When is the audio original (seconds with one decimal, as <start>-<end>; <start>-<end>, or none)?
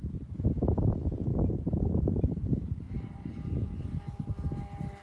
0.0-1.3; 4.0-5.0